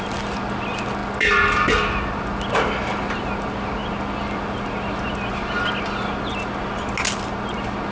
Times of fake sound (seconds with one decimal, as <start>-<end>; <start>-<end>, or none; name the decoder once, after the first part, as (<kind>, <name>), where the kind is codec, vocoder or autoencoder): none